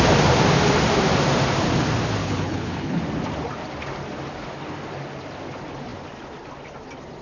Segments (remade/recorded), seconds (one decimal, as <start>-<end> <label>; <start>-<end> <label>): 0.0-2.2 recorded; 2.2-3.0 remade; 3.0-7.2 recorded